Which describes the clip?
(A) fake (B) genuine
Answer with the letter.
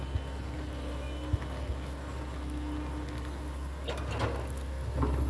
B